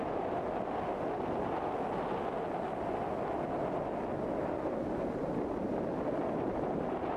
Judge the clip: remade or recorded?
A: recorded